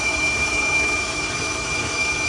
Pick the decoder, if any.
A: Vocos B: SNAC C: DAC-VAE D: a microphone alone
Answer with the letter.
C